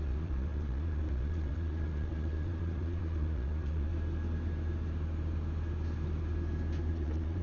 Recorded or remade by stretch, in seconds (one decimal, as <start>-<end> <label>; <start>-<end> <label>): 0.0-3.9 remade; 3.9-6.9 recorded; 6.9-7.4 remade

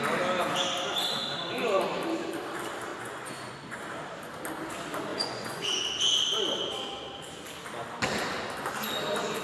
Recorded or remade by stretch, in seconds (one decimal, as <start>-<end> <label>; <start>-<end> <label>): 0.0-2.9 recorded; 2.9-3.8 remade; 3.8-5.1 recorded; 5.1-5.8 remade; 5.8-9.4 recorded

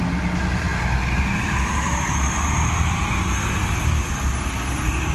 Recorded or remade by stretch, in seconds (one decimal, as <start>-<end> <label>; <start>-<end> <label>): 0.0-5.1 recorded

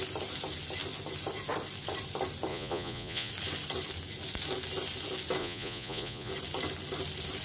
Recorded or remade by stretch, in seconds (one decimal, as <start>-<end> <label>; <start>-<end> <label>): 0.0-2.5 recorded; 2.5-3.3 remade; 3.3-5.4 recorded; 5.4-6.3 remade; 6.3-7.4 recorded

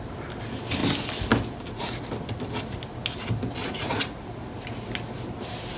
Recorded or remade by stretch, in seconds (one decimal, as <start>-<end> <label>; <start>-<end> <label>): 0.0-3.6 recorded; 3.6-4.2 remade; 4.2-5.8 recorded

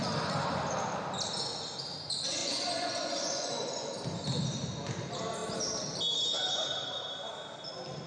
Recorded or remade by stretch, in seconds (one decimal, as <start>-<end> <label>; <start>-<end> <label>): 0.0-2.4 recorded; 2.4-3.9 remade; 3.9-8.1 recorded

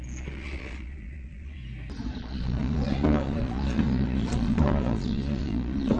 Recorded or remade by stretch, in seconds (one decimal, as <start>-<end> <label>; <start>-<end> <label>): 0.0-1.6 remade; 1.6-2.2 recorded; 2.2-6.0 remade